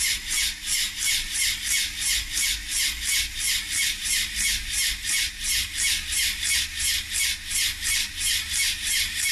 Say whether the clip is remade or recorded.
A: recorded